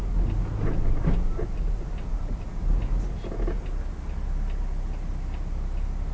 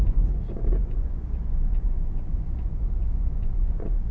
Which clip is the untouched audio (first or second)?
first